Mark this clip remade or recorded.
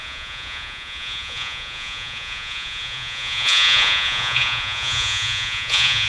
remade